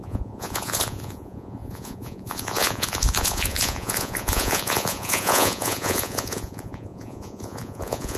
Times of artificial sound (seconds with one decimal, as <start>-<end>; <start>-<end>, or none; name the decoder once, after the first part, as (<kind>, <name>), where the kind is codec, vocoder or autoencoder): 0.0-8.2 (vocoder, Vocos)